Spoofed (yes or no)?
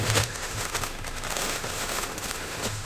yes